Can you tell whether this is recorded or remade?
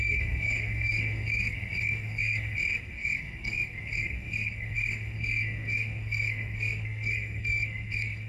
remade